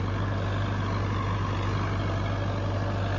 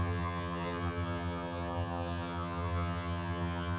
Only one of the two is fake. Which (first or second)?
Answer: second